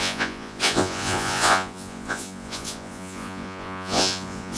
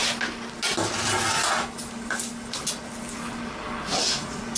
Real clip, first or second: second